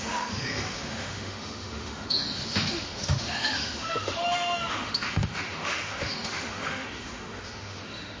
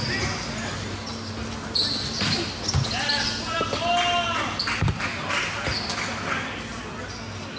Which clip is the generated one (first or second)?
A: first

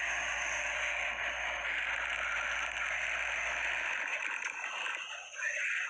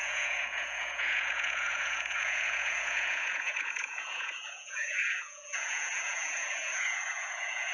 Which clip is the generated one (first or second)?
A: second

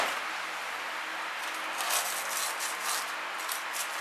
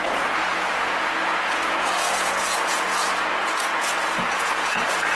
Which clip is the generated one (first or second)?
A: second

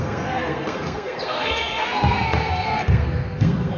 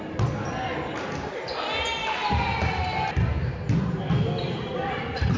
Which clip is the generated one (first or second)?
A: first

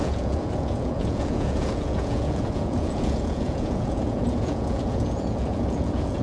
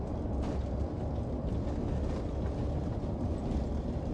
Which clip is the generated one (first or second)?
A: first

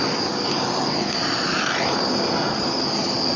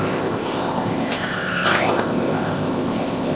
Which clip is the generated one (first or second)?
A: second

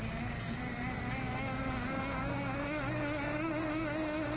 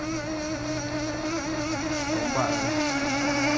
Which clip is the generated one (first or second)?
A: second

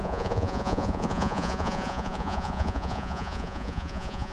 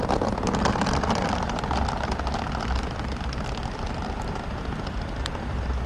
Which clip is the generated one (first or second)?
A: first